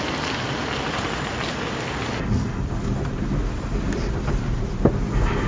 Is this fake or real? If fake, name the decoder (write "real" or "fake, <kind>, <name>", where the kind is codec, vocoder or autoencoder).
real